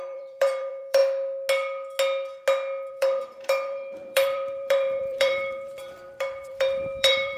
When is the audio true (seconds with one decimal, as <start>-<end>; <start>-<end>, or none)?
1.0-2.9